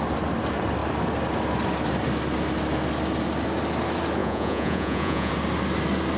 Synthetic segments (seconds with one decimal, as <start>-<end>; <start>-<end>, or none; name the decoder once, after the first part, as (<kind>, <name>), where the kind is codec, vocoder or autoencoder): 4.2-5.3 (vocoder, Vocos)